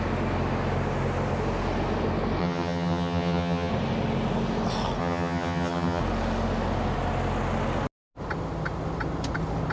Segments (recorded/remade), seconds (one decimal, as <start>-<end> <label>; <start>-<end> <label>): 0.0-2.4 recorded; 2.4-3.7 remade; 3.7-5.0 recorded; 5.0-6.0 remade; 6.0-9.7 recorded